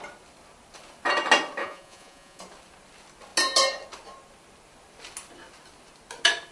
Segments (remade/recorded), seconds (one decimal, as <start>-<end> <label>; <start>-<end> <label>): 0.0-1.6 recorded; 1.6-2.4 remade; 2.4-6.5 recorded